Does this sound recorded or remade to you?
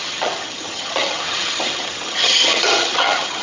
remade